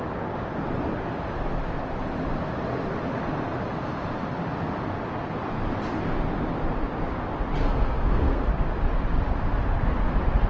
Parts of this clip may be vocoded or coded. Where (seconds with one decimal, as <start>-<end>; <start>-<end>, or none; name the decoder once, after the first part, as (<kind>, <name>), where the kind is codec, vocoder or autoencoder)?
7.6-8.5 (codec, SNAC)